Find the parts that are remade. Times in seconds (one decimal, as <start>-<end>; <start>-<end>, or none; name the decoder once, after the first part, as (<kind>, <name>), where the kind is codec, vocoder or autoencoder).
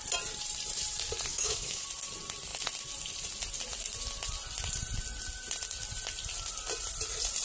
1.3-1.8 (autoencoder, DAC-VAE)